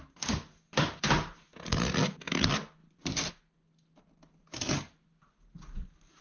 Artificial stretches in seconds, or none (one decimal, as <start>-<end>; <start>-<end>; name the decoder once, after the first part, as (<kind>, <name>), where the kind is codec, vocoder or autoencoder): none